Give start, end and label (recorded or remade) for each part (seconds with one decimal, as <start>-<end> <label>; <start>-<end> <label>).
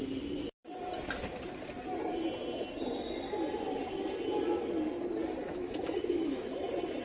0.0-5.4 recorded; 5.4-6.5 remade; 6.5-7.0 recorded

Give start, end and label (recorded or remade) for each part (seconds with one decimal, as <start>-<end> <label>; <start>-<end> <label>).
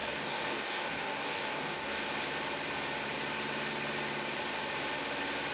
0.0-2.0 remade; 2.0-5.5 recorded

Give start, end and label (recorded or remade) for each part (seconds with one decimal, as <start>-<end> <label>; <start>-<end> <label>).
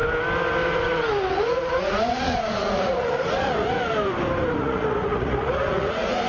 0.0-1.3 recorded; 1.3-3.7 remade; 3.7-4.6 recorded; 4.6-6.3 remade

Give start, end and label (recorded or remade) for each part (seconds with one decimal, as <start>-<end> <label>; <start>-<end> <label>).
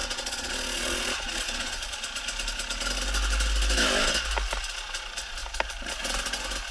0.0-2.0 remade; 2.0-6.7 recorded